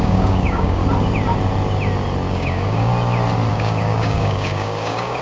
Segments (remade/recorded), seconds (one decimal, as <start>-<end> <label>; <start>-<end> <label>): 0.0-0.8 remade; 0.8-2.3 recorded; 2.3-2.9 remade; 2.9-3.5 recorded; 3.5-5.2 remade